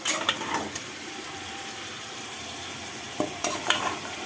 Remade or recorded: remade